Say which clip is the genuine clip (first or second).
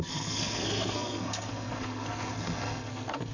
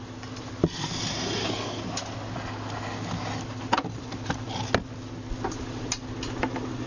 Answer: second